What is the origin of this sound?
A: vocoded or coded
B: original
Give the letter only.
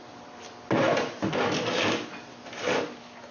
B